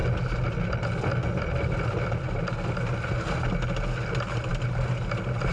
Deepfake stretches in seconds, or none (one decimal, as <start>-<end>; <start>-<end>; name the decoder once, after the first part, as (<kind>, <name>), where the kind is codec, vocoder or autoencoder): none